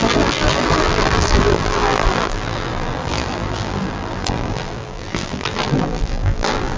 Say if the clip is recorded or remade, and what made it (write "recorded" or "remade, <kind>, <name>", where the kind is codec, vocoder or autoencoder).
remade, vocoder, BigVGAN v2